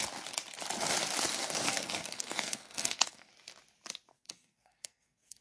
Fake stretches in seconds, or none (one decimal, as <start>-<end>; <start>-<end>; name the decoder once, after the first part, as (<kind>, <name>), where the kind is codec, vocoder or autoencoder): 1.3-3.3 (codec, SNAC); 4.1-5.4